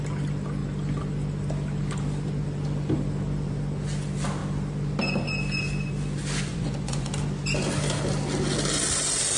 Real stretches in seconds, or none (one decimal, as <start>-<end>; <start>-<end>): 0.0-6.5; 7.1-9.4